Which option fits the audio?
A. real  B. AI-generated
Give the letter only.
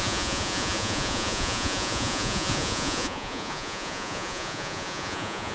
B